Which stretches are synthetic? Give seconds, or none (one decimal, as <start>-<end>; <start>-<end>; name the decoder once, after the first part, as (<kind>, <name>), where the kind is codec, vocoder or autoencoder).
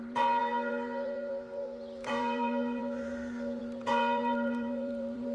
0.0-5.3 (vocoder, BigVGAN v2)